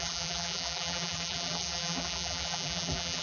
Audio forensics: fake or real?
fake